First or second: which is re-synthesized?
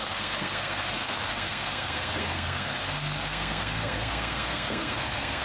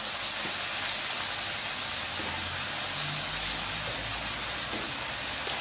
first